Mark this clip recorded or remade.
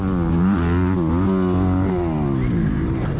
recorded